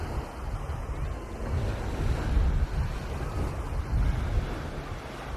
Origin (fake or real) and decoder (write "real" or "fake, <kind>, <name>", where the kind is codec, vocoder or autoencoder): real